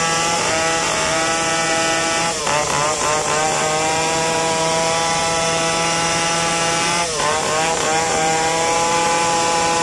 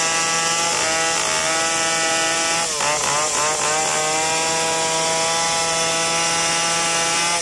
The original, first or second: second